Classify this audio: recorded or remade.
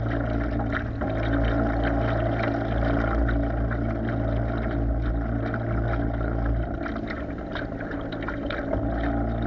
recorded